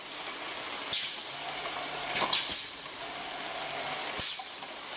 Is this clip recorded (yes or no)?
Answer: yes